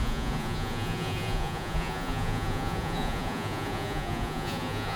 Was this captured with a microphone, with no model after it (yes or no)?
no